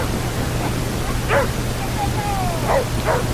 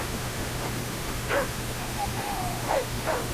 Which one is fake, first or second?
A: second